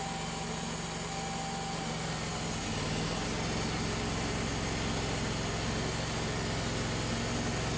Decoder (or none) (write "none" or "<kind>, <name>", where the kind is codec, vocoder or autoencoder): none